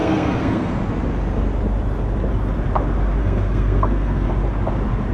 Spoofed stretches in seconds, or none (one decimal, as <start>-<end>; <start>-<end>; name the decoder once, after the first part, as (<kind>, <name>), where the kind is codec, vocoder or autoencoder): 0.0-0.7 (codec, SNAC); 3.2-4.3